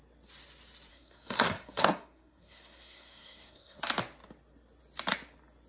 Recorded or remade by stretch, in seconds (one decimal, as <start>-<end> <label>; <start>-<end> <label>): 0.0-0.9 recorded; 0.9-3.8 remade; 3.8-5.7 recorded